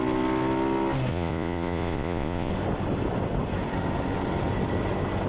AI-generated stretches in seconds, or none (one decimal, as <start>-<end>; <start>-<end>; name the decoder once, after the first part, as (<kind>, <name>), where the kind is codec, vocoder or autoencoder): 1.1-2.5 (vocoder, Vocos)